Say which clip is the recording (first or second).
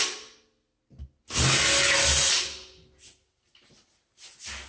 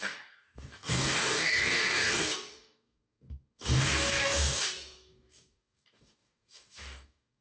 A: first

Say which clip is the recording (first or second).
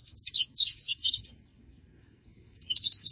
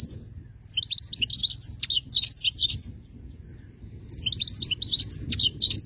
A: second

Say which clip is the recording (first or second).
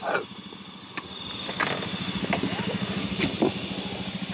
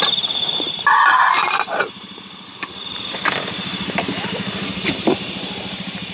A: first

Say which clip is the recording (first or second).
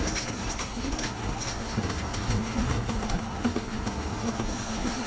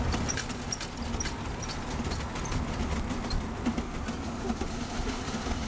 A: second